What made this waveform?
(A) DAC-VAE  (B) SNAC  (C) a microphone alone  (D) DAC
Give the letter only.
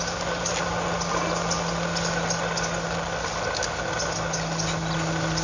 C